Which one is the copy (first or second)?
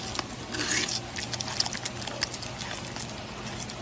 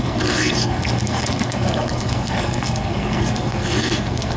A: second